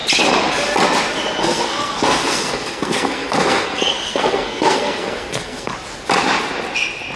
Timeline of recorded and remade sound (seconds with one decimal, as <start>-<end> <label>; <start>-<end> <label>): 0.0-1.4 recorded; 1.4-5.7 remade; 5.7-7.2 recorded